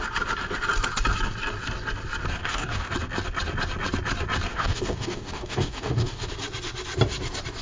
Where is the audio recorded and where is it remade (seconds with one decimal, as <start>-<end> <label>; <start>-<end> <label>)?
0.0-2.4 recorded; 2.4-2.9 remade; 2.9-4.5 recorded; 4.5-6.3 remade; 6.3-7.6 recorded

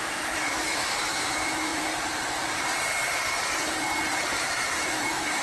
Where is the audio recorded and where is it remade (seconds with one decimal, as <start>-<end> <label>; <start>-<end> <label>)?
0.0-1.7 remade; 1.7-4.9 recorded; 4.9-5.4 remade

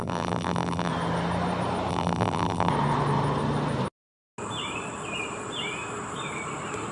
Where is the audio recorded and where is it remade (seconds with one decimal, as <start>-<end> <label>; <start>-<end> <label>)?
0.0-0.9 remade; 0.9-1.9 recorded; 1.9-2.7 remade; 2.7-6.9 recorded

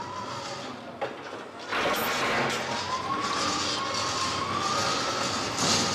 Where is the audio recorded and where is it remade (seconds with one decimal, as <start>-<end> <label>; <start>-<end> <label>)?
0.0-5.9 recorded

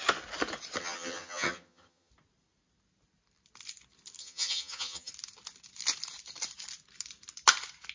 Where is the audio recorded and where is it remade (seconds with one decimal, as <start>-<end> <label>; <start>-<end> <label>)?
0.0-0.8 recorded; 0.8-2.1 remade; 2.1-4.2 recorded; 4.2-5.1 remade; 5.1-7.9 recorded

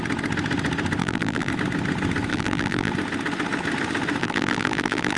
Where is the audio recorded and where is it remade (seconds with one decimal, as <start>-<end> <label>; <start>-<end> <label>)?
0.0-1.0 recorded; 1.0-1.5 remade; 1.5-2.3 recorded; 2.3-2.9 remade; 2.9-4.2 recorded; 4.2-5.2 remade

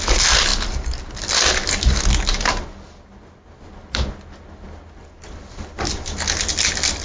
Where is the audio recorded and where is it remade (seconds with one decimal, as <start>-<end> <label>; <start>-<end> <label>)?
0.0-5.0 recorded; 5.0-6.5 remade; 6.5-7.0 recorded